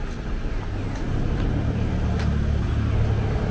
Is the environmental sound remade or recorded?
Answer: recorded